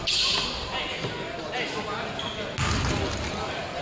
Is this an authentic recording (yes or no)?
yes